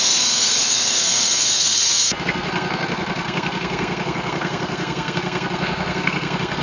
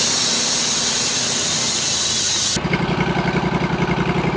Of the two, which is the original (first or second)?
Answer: second